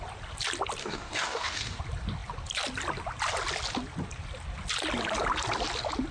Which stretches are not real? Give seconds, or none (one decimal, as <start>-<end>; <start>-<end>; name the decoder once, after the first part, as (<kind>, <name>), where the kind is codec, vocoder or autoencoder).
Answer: 0.8-1.8 (codec, DAC)

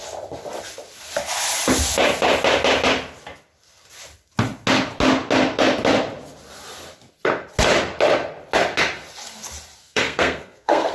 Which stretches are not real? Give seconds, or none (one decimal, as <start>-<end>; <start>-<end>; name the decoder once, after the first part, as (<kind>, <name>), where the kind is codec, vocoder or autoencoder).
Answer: 9.8-10.9 (codec, SNAC)

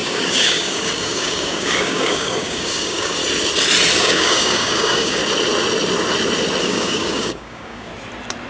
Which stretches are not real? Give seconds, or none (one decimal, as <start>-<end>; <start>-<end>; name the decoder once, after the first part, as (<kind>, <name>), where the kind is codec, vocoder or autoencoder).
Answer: 0.0-3.2 (codec, DAC); 4.0-5.2; 6.6-7.9

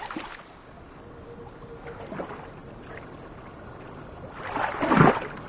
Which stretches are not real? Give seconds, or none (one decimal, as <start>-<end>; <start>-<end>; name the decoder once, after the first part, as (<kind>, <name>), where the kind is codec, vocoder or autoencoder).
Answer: none

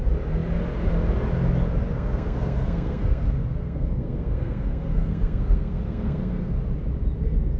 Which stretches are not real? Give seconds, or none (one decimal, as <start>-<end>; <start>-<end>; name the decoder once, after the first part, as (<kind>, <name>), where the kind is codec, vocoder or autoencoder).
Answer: 1.9-6.5 (codec, SNAC)

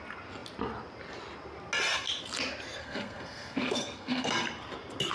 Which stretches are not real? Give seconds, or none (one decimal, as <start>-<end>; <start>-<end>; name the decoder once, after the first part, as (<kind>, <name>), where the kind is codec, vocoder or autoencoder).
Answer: 2.8-4.3 (codec, SNAC)